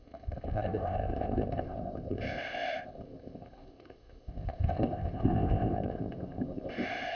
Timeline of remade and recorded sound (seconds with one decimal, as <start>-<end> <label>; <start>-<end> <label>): 0.0-7.2 remade